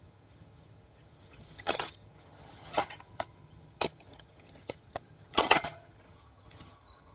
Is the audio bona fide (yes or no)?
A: no